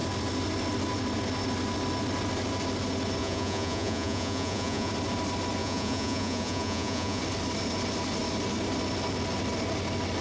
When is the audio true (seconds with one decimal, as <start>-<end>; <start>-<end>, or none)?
0.0-3.2; 4.9-5.6; 7.2-10.2